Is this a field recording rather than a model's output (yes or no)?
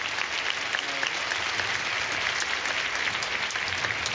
yes